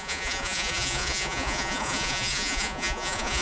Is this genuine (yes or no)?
no